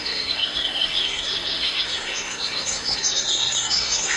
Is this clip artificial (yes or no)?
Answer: yes